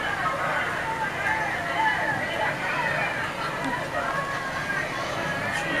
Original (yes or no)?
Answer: yes